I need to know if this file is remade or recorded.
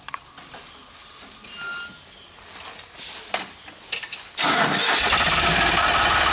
recorded